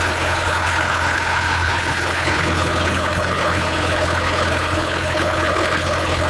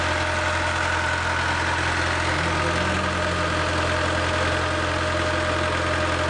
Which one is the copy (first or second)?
first